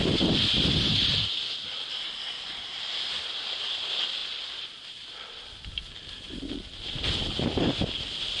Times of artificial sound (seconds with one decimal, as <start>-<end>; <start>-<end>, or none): none